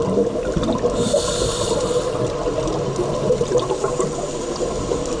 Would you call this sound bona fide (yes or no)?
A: yes